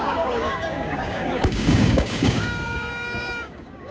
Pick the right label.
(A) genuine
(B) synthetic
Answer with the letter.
B